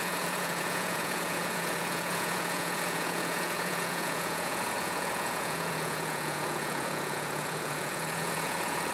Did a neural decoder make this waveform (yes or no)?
yes